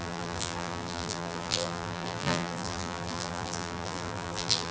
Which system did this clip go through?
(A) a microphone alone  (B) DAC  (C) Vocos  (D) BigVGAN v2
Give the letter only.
D